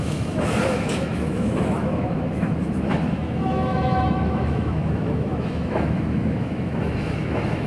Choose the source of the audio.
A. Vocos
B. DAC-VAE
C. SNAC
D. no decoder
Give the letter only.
B